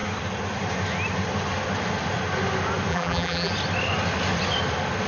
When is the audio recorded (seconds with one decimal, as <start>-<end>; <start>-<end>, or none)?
0.0-2.9; 3.5-5.1